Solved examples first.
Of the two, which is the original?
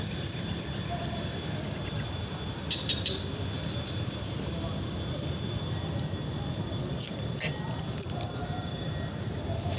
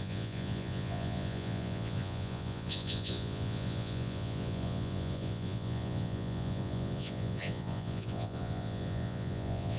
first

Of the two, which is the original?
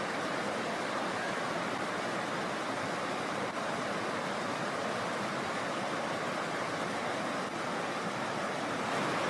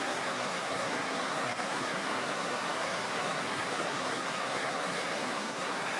first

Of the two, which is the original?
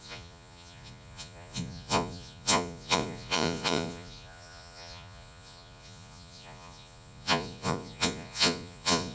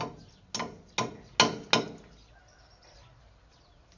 second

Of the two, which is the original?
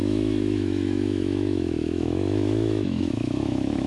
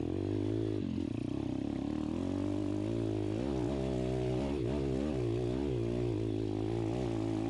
second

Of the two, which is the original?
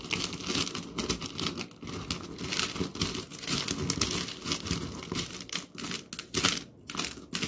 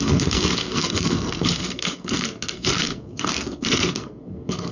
first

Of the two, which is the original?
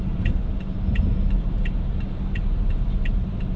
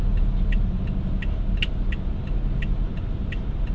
second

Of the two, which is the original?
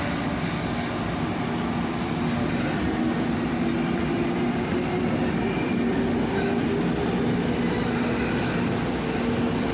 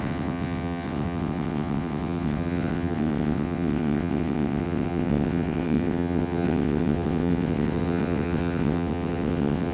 first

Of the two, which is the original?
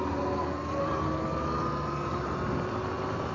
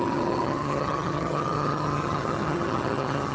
first